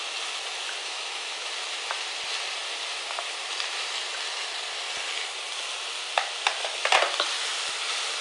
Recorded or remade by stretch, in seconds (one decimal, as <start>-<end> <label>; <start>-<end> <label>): 0.0-0.8 recorded; 0.8-1.5 remade; 1.5-8.2 recorded